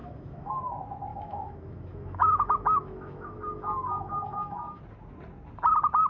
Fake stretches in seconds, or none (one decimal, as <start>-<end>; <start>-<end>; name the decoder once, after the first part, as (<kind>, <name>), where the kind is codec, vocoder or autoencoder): 0.0-0.5 (autoencoder, DAC-VAE); 1.1-4.8